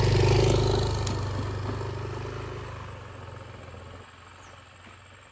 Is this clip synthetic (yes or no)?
no